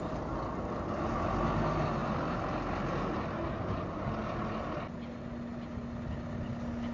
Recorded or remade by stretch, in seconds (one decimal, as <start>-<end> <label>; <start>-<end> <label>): 0.0-6.9 recorded